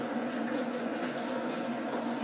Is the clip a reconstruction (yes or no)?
yes